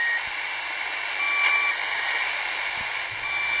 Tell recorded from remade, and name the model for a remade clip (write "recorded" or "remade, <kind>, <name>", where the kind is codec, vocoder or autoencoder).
recorded